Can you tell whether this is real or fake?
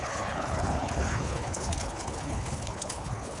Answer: fake